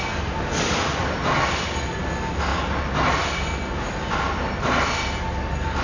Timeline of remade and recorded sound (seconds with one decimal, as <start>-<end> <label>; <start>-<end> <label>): 0.0-5.8 recorded